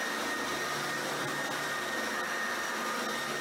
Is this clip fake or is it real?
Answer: real